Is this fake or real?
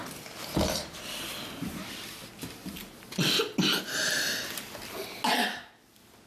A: real